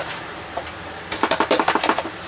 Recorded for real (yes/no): no